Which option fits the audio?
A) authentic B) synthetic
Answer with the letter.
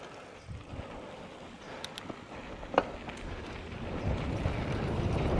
A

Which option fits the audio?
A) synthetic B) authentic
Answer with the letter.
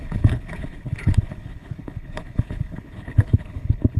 A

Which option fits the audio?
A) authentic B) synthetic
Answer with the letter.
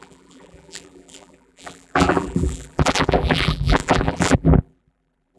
B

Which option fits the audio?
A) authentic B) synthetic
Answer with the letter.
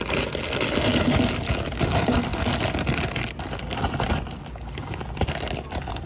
A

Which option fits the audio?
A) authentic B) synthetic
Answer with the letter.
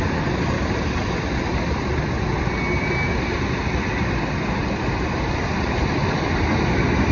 A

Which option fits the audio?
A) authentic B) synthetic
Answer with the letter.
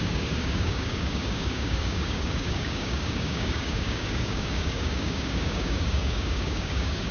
B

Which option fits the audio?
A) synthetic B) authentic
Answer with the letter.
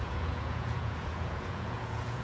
A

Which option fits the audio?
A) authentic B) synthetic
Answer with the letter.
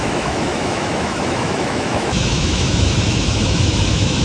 B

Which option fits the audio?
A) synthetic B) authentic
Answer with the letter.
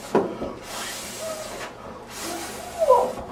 B